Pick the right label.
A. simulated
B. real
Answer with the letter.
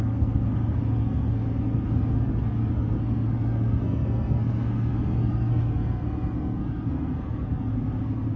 A